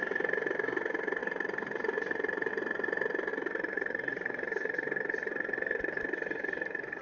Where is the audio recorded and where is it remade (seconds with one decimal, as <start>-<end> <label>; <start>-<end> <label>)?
0.0-1.2 recorded; 1.2-2.5 remade; 2.5-3.3 recorded; 3.3-6.0 remade; 6.0-7.0 recorded